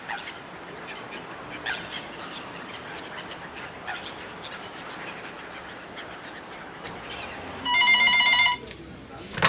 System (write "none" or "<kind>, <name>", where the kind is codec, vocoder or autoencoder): none